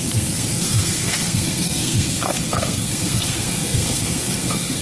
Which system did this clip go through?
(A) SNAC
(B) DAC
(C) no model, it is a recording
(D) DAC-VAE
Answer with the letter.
A